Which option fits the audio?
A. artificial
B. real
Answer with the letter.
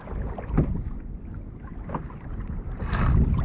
B